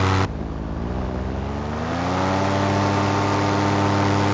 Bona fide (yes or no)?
yes